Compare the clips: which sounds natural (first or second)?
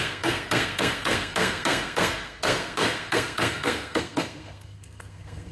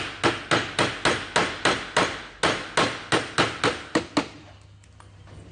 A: second